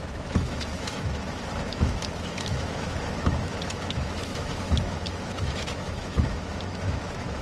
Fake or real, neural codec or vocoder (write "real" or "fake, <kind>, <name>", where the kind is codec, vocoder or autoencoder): fake, autoencoder, DAC-VAE